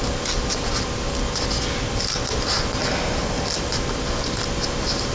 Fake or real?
real